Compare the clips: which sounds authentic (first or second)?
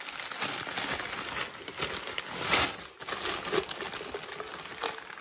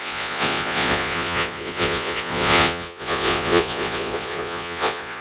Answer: first